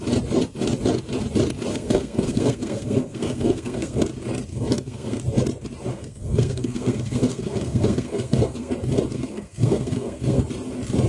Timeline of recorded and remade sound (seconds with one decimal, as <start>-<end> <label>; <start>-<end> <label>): 0.0-1.7 recorded; 1.7-4.0 remade; 4.0-4.5 recorded; 4.5-5.2 remade; 5.2-5.9 recorded; 5.9-8.7 remade; 8.7-9.1 recorded; 9.1-10.4 remade; 10.4-11.1 recorded